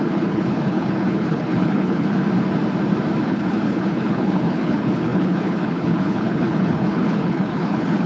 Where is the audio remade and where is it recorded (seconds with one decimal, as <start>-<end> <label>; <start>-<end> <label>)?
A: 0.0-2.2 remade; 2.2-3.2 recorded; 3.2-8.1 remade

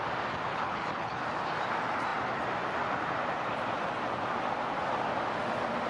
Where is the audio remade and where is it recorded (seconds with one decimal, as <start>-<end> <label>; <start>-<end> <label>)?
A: 0.0-0.5 recorded; 0.5-1.2 remade; 1.2-5.9 recorded

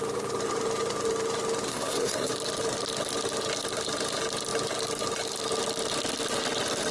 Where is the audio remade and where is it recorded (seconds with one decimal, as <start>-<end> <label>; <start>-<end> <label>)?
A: 0.0-1.7 recorded; 1.7-2.3 remade; 2.3-6.9 recorded